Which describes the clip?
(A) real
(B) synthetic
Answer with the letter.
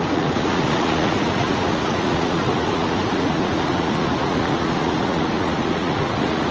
B